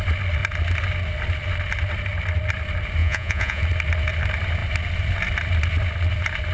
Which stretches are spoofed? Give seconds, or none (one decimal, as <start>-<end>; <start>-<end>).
3.0-3.6